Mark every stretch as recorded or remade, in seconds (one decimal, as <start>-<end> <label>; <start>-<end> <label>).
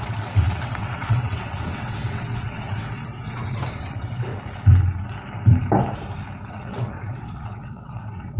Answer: 0.0-4.3 remade; 4.3-6.5 recorded; 6.5-8.4 remade